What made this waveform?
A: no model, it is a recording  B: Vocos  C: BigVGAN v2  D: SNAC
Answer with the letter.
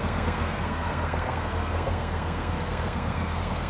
D